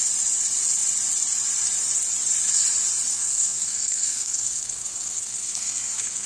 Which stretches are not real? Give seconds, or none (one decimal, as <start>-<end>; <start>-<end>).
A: 3.1-6.3

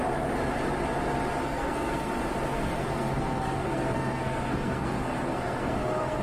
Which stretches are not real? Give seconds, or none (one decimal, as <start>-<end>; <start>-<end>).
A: 1.4-2.1; 2.5-6.2